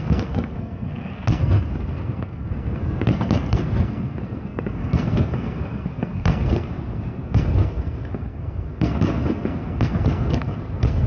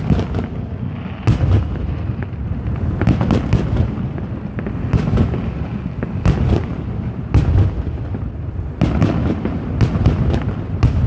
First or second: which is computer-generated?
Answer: first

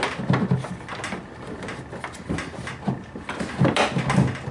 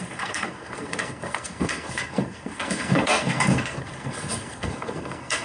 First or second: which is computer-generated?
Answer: second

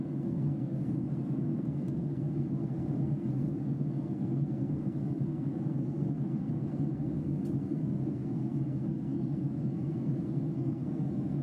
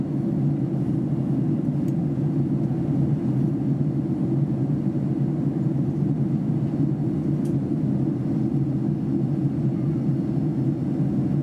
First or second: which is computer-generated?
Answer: first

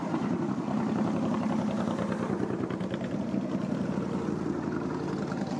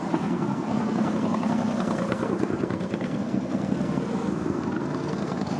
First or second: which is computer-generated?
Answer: second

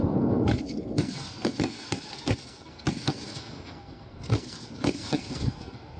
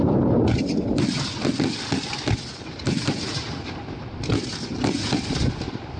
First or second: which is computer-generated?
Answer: first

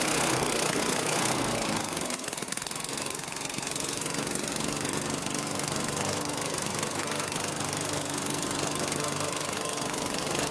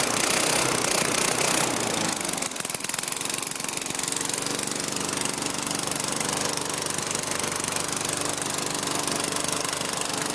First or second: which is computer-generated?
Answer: first